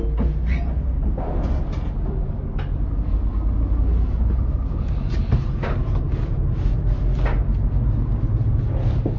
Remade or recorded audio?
recorded